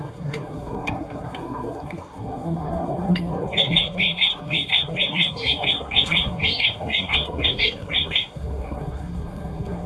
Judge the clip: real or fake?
fake